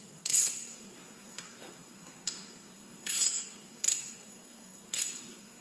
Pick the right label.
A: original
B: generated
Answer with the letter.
B